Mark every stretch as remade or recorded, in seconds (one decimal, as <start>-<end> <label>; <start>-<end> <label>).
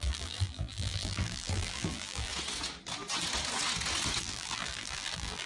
0.0-2.3 remade; 2.3-4.2 recorded; 4.2-5.5 remade